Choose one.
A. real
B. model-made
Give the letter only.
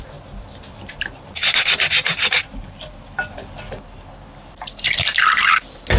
B